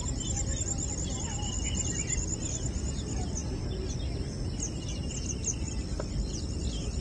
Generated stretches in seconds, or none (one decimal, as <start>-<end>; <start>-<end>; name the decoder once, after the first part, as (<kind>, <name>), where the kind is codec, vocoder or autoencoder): none